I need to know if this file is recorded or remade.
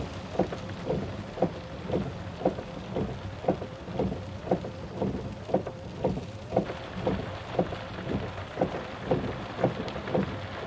recorded